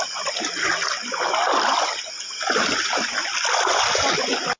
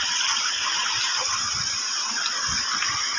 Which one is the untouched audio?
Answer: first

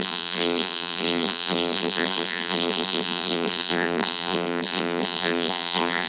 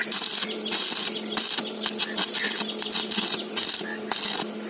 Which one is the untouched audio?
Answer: second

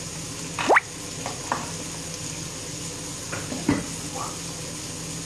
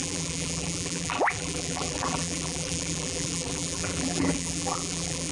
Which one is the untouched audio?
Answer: first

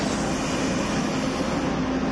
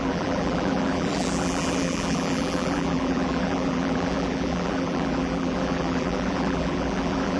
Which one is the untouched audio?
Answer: first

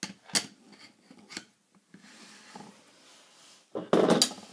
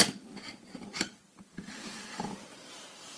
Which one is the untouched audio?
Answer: first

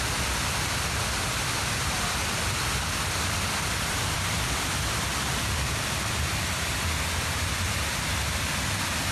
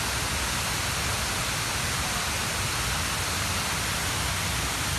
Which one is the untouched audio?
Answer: second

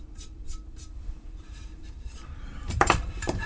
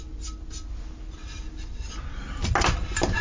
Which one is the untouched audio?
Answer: second